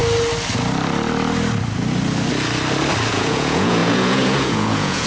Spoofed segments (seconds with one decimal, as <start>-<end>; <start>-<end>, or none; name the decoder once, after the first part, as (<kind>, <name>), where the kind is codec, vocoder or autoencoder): 3.1-5.1 (vocoder, Vocos)